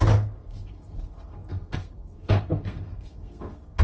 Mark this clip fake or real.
fake